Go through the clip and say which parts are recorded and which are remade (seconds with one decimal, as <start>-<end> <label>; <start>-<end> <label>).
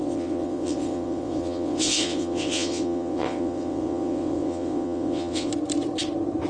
0.0-5.5 remade; 5.5-6.5 recorded